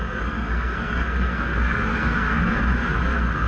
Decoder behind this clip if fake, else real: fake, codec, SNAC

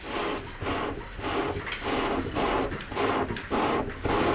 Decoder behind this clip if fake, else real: real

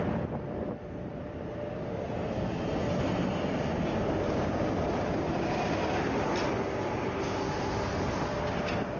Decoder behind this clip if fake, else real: real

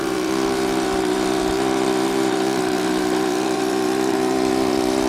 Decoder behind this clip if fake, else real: fake, vocoder, BigVGAN v2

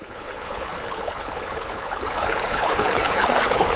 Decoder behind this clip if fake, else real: fake, codec, HILCodec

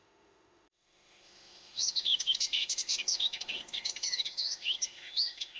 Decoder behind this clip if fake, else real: fake, autoencoder, DAC-VAE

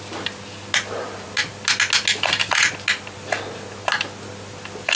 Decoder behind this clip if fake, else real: real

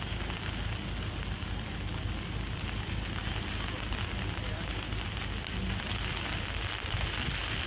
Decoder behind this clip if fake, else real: real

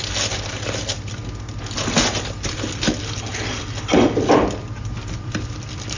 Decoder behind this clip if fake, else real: real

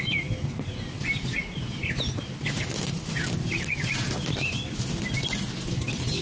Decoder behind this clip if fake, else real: real